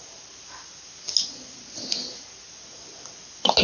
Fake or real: real